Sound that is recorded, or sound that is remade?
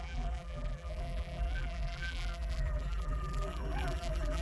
remade